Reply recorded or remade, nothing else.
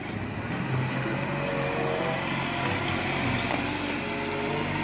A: recorded